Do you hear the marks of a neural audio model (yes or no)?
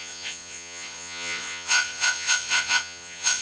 yes